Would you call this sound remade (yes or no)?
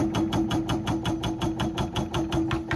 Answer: no